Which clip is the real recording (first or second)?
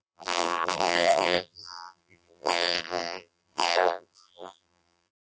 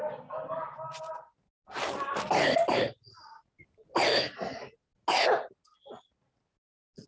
second